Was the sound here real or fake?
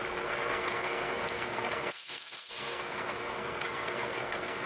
fake